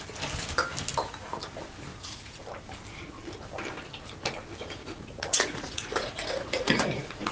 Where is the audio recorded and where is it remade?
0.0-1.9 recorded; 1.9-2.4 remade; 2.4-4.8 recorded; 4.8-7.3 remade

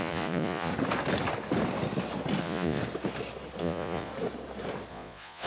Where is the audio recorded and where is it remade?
0.0-0.7 remade; 0.7-2.4 recorded; 2.4-2.8 remade; 2.8-3.6 recorded; 3.6-4.1 remade; 4.1-4.9 recorded; 4.9-5.5 remade

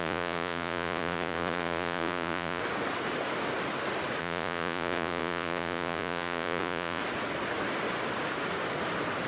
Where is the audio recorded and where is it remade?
0.0-2.6 remade; 2.6-4.2 recorded; 4.2-7.0 remade; 7.0-9.3 recorded

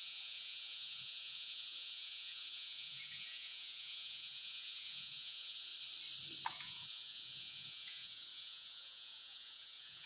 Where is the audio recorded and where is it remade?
0.0-5.7 remade; 5.7-6.5 recorded; 6.5-10.1 remade

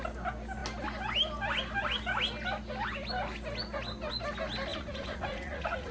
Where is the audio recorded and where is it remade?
0.0-4.7 recorded; 4.7-5.9 remade

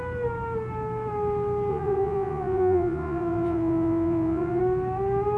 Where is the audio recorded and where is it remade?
0.0-1.7 recorded; 1.7-4.6 remade; 4.6-5.4 recorded